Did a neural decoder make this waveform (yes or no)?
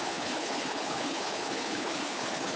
yes